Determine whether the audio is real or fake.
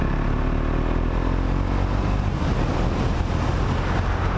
real